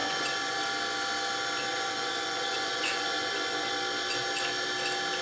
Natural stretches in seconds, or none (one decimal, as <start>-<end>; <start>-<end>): 0.6-1.7; 3.7-5.2

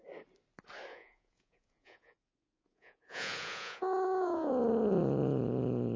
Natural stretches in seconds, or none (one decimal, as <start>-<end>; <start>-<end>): 0.0-0.9; 4.5-6.0